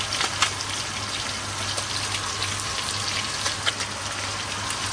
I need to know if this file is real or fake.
real